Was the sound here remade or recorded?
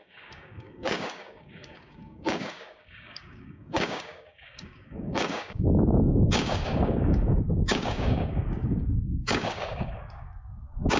remade